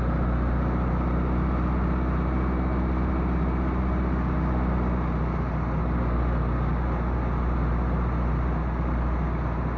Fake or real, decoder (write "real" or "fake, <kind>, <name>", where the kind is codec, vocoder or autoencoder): real